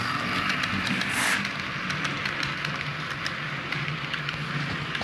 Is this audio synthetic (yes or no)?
no